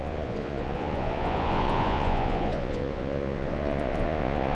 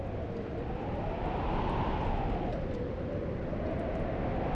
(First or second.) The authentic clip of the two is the second